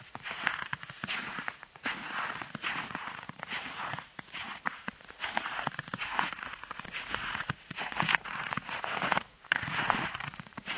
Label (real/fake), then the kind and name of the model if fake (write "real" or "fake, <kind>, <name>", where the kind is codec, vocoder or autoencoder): fake, vocoder, Vocos